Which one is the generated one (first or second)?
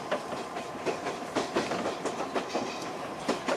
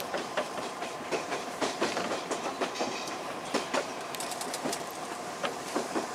second